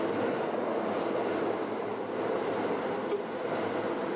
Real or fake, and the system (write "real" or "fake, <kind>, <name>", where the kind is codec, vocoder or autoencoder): real